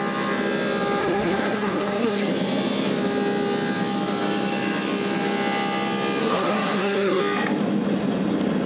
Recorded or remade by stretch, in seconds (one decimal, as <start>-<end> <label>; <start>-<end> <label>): 0.0-1.0 recorded; 1.0-2.3 remade; 2.3-6.2 recorded; 6.2-7.2 remade; 7.2-8.7 recorded